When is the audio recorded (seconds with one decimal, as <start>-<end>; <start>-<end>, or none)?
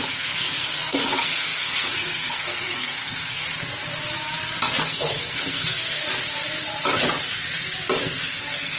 3.4-4.8; 6.0-8.0